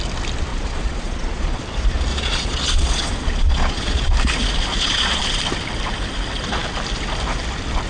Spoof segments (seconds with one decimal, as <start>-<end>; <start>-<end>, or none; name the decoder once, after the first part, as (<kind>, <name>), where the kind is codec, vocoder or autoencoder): 0.5-1.6 (vocoder, Vocos); 2.1-4.1; 4.7-5.2